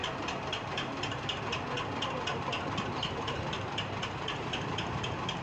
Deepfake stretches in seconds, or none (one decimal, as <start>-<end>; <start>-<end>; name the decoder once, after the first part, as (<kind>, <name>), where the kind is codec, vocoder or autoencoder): 0.0-1.4 (vocoder, BigVGAN v2); 2.3-5.4